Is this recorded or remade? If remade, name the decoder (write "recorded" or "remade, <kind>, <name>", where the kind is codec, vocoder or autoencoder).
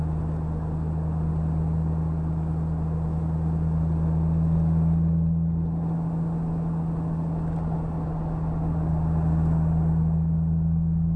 recorded